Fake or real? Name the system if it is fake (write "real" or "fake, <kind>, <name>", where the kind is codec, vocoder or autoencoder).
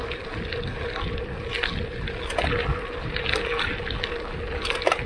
real